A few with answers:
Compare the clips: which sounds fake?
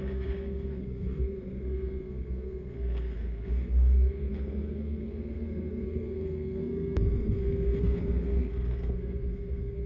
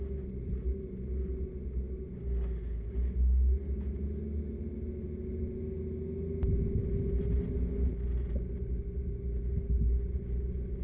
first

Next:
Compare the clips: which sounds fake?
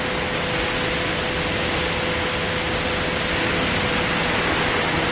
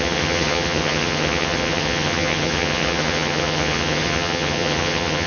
second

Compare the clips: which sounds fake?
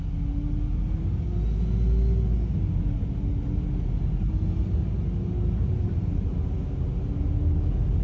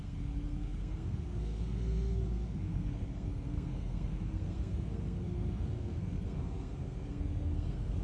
second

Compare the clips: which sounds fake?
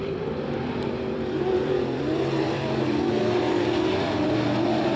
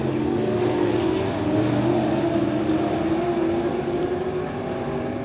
first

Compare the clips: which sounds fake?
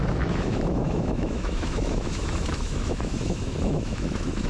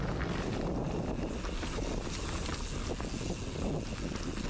first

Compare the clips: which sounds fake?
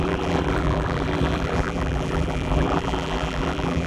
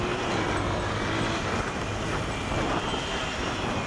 first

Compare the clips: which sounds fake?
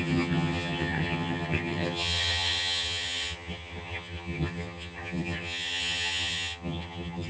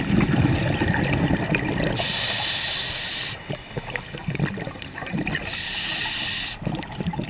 first